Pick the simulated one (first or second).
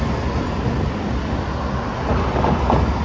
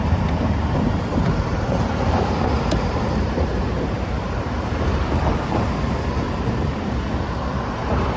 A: second